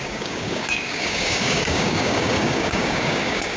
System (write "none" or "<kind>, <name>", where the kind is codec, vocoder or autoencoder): codec, DAC